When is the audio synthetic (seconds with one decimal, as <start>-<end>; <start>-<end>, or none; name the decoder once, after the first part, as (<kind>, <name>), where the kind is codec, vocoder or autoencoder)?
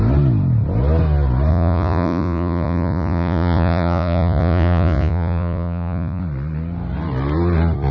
1.5-6.2 (vocoder, Vocos)